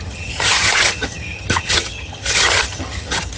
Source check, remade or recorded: remade